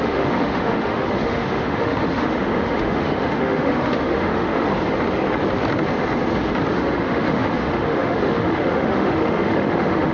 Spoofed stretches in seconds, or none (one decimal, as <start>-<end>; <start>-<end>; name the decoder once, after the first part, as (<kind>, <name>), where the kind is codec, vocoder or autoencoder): 0.0-4.7 (autoencoder, DAC-VAE); 6.7-10.1